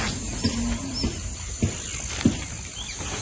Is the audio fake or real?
real